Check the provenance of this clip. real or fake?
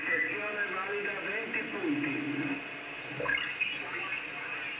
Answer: real